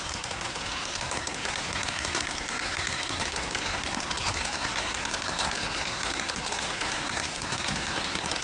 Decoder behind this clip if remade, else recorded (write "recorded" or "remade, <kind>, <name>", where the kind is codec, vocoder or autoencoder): remade, codec, SNAC